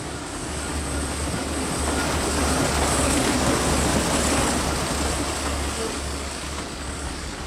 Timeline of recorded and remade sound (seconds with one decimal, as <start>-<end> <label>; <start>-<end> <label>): 0.0-0.7 remade; 0.7-2.0 recorded; 2.0-2.4 remade; 2.4-3.0 recorded; 3.0-3.9 remade; 3.9-5.4 recorded; 5.4-7.5 remade